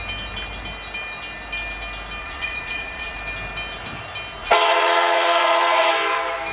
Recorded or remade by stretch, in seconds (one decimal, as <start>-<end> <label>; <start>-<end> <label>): 0.0-2.2 recorded; 2.2-3.2 remade; 3.2-4.4 recorded; 4.4-5.9 remade; 5.9-6.5 recorded